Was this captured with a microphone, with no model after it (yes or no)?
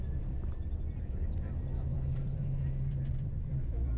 no